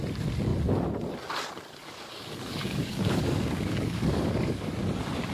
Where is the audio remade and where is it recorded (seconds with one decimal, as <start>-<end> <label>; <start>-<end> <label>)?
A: 0.0-1.8 recorded; 1.8-4.7 remade; 4.7-5.3 recorded